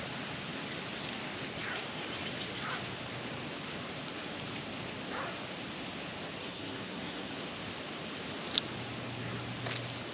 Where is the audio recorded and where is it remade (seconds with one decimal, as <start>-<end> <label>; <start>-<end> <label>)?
0.0-6.4 recorded; 6.4-7.3 remade; 7.3-10.1 recorded